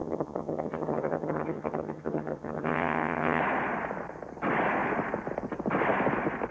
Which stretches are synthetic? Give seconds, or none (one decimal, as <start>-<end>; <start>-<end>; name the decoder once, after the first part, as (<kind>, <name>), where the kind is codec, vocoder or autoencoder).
0.0-3.4 (vocoder, HiFi-GAN)